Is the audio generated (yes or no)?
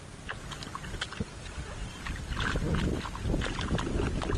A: no